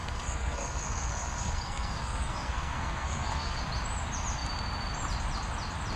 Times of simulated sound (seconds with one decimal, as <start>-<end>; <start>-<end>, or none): 0.0-3.6